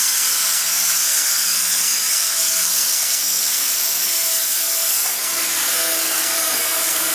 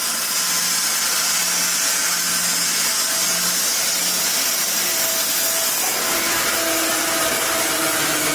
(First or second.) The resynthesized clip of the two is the first